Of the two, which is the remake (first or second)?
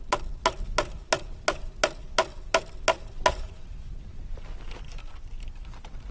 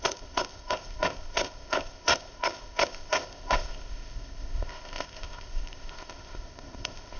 second